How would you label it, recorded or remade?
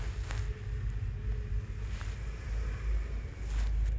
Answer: recorded